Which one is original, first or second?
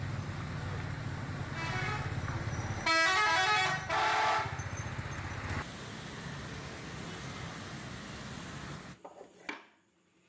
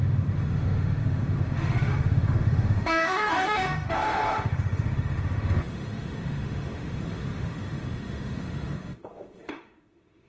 first